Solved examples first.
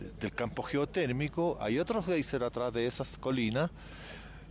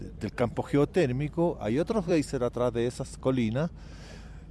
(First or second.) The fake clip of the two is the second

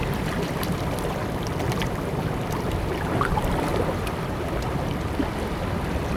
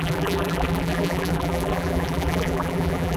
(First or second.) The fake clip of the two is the second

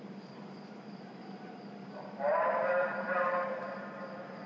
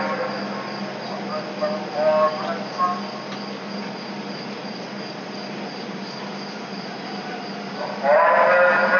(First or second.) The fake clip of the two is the first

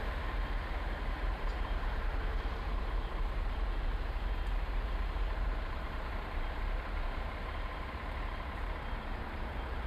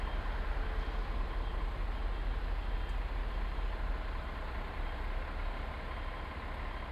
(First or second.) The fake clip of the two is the first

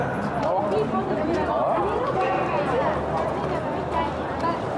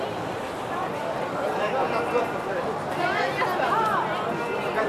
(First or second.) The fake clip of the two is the second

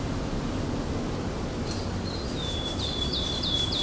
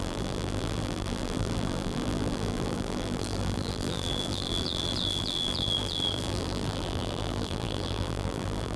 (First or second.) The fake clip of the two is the second